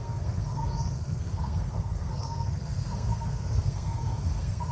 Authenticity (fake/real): fake